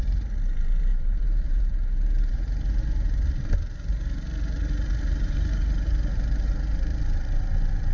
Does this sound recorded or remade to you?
remade